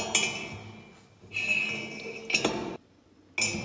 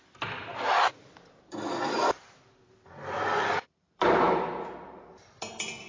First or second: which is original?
first